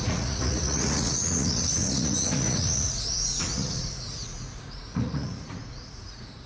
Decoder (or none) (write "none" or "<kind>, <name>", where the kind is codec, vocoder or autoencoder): vocoder, Vocos